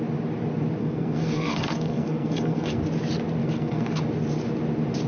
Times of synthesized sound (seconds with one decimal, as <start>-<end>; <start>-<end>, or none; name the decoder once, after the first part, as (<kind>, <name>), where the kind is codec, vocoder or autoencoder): 0.8-2.8 (codec, SNAC); 3.4-4.0